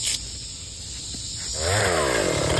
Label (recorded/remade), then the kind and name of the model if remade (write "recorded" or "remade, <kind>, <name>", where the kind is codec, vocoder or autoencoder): recorded